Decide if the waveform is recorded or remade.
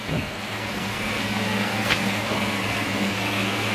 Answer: remade